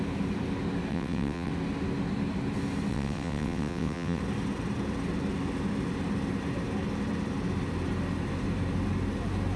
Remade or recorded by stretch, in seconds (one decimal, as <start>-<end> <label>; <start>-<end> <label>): 0.0-0.9 recorded; 0.9-1.5 remade; 1.5-2.9 recorded; 2.9-4.2 remade; 4.2-9.6 recorded